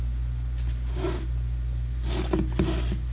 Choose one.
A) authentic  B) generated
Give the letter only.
A